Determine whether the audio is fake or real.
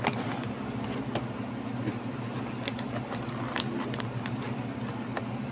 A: real